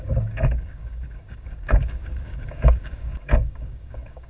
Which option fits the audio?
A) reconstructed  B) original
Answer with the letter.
A